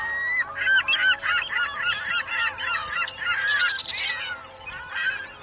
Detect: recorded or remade recorded